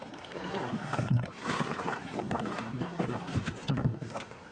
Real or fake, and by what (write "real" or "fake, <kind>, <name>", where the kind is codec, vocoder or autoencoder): fake, codec, SNAC